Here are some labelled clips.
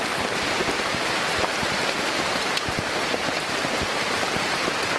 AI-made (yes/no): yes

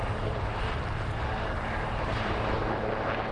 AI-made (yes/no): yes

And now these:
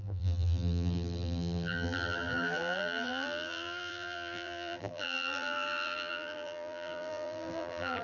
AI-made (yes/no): yes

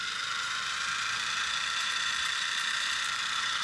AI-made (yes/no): yes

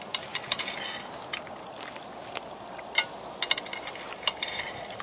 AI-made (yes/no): no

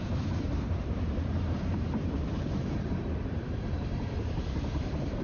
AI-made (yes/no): yes